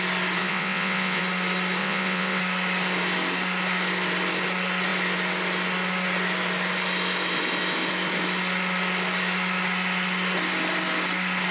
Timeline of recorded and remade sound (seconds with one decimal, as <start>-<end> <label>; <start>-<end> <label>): 0.0-0.4 recorded; 0.4-1.2 remade; 1.2-1.8 recorded; 1.8-2.4 remade; 2.4-11.5 recorded